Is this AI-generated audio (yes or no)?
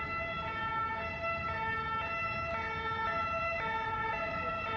no